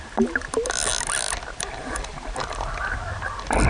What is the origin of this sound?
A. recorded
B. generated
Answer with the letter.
A